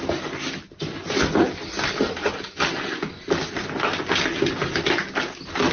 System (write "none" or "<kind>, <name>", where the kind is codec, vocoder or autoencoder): none